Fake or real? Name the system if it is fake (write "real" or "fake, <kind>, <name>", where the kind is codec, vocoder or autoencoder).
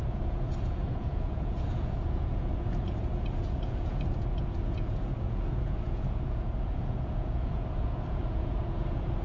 fake, vocoder, Vocos